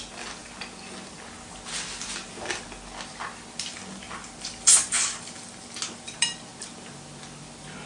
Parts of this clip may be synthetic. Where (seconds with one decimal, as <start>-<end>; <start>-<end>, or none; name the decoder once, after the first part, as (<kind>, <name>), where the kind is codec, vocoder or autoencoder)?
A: none